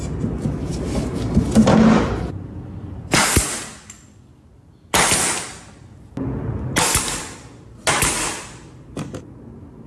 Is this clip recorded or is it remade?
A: recorded